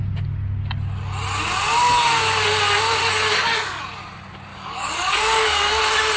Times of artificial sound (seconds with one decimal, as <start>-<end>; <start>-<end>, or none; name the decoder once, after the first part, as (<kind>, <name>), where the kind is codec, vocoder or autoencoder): 3.0-3.8 (codec, DAC); 4.5-5.8

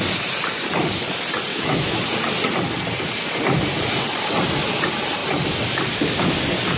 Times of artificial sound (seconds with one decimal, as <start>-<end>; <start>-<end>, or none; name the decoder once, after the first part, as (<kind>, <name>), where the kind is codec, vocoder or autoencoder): 1.5-2.0 (autoencoder, DAC-VAE)

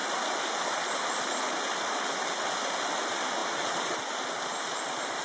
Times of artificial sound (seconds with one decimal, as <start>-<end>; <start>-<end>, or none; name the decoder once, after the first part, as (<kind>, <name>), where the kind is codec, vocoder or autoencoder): none

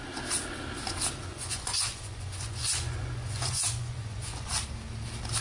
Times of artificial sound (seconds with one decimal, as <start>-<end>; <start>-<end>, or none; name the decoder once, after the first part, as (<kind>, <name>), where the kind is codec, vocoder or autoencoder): 1.3-4.5 (vocoder, Vocos)

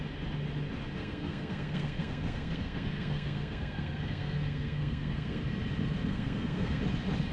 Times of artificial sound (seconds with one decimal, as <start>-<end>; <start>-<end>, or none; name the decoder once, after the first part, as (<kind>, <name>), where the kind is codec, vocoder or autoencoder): 1.0-5.4 (codec, SNAC); 6.1-6.8

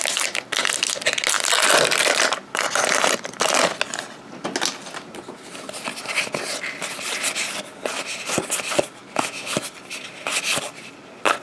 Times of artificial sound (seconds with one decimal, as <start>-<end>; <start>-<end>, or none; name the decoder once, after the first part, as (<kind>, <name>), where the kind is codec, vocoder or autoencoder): none

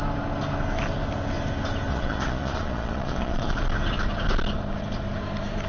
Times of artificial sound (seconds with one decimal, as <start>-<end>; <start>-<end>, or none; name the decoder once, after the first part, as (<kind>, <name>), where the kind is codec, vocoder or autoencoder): 1.9-3.5 (vocoder, Vocos)

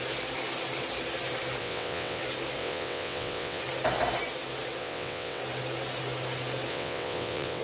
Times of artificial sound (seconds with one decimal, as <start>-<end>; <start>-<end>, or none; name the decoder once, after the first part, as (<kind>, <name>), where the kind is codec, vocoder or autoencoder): 1.6-2.2 (vocoder, WaveNeXt); 2.6-3.6; 4.8-5.4; 6.7-7.6